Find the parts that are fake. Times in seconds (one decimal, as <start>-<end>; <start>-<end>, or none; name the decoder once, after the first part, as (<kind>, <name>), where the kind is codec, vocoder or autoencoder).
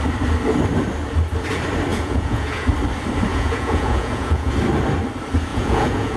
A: 1.9-2.7 (vocoder, Vocos); 3.3-4.5; 5.5-6.2